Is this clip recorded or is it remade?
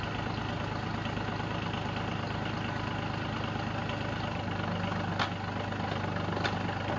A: recorded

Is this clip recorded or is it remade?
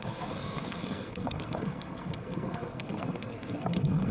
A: remade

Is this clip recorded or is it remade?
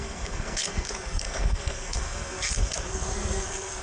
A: remade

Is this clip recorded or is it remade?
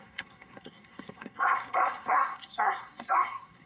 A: remade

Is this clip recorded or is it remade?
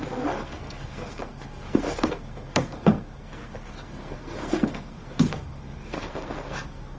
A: remade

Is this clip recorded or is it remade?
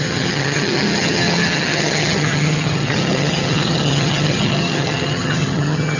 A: remade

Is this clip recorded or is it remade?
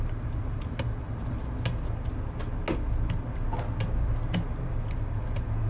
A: recorded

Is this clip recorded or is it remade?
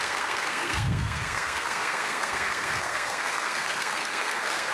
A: remade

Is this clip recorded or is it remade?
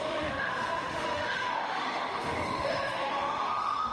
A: remade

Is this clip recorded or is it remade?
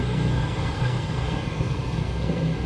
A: remade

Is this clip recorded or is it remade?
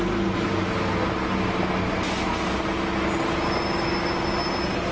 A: recorded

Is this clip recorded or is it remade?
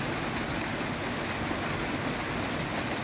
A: recorded